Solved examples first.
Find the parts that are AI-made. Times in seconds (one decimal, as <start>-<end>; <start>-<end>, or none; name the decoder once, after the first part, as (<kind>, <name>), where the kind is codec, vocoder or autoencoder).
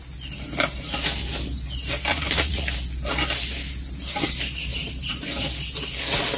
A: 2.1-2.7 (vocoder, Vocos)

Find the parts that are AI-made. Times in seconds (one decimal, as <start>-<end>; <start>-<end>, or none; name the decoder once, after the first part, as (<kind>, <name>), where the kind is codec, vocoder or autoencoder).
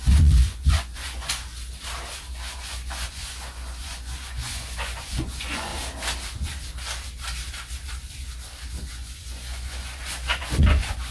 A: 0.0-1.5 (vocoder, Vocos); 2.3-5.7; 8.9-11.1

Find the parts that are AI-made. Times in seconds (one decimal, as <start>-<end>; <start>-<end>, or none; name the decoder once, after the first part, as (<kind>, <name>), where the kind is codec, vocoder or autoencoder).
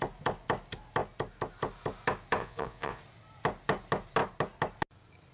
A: 2.4-3.0 (vocoder, Vocos)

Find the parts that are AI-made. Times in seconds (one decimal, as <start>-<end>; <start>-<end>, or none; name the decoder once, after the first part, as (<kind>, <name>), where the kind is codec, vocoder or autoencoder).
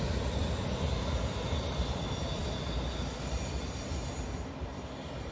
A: none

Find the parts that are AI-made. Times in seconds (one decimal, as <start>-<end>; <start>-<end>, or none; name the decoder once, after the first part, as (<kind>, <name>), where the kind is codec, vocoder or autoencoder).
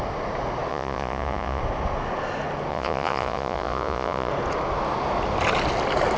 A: 0.7-1.6 (vocoder, Vocos); 2.7-4.3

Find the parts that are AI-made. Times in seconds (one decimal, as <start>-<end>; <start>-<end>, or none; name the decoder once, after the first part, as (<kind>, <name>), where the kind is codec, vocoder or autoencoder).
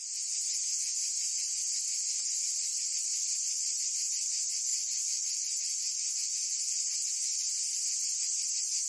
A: 4.7-7.4 (vocoder, Vocos)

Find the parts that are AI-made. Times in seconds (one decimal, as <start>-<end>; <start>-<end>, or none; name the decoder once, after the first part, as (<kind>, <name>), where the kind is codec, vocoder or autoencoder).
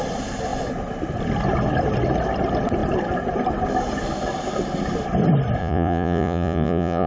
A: 5.6-7.1 (vocoder, Vocos)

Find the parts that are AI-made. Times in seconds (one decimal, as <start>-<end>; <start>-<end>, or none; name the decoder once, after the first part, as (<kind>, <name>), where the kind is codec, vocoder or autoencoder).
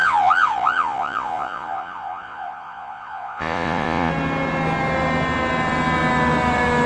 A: 0.0-4.1 (vocoder, Vocos)